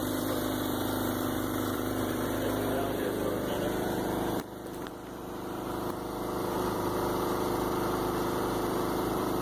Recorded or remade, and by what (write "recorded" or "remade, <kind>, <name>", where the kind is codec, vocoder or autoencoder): remade, vocoder, BigVGAN v2